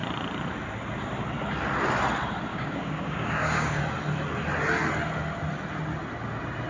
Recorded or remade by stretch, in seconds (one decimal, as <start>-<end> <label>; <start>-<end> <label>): 0.0-2.5 recorded; 2.5-3.8 remade; 3.8-6.7 recorded